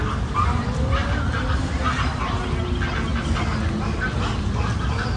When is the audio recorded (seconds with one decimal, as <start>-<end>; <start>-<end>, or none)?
0.0-5.2